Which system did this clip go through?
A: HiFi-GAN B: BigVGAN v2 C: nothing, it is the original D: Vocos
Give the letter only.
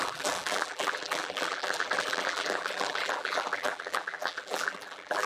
B